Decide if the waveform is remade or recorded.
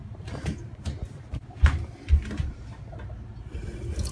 recorded